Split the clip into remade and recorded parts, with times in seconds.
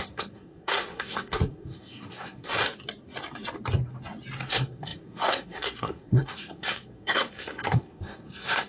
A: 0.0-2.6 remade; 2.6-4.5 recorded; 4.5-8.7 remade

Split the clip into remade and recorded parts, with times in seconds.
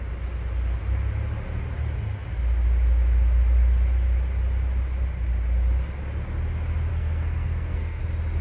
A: 0.0-6.9 recorded; 6.9-8.0 remade; 8.0-8.4 recorded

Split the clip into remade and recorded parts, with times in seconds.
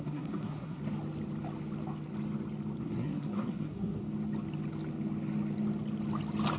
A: 0.0-0.8 remade; 0.8-2.8 recorded; 2.8-4.0 remade; 4.0-6.6 recorded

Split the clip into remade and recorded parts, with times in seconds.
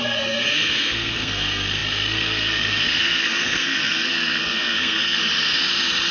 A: 0.0-5.2 remade; 5.2-6.1 recorded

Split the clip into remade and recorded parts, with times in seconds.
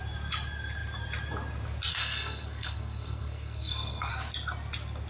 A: 0.0-1.9 recorded; 1.9-4.1 remade; 4.1-5.1 recorded